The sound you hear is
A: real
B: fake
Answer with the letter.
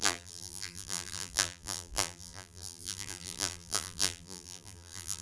B